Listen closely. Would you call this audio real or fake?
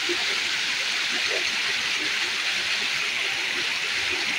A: real